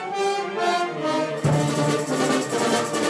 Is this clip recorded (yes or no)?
yes